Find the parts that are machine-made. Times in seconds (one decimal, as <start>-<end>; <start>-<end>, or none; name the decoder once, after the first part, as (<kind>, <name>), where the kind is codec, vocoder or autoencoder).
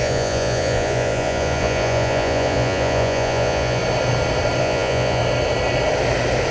0.0-3.8 (vocoder, Vocos); 4.6-5.2